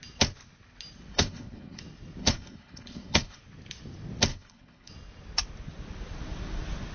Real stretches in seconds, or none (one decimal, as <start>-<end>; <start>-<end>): 0.0-1.1; 1.8-2.2; 3.4-4.3; 4.9-6.9